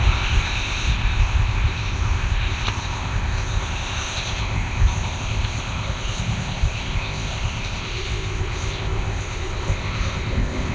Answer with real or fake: fake